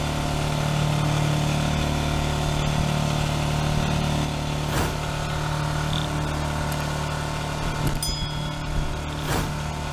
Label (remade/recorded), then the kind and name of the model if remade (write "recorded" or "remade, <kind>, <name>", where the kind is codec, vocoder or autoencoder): recorded